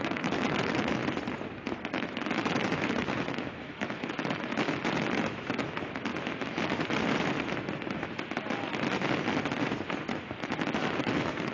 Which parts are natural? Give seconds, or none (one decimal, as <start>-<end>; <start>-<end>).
1.0-1.7; 6.1-10.4